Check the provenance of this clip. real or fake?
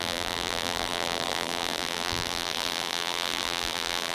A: fake